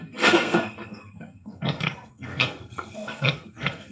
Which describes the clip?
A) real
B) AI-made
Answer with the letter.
B